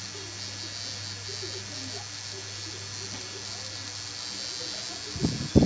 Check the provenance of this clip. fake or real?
real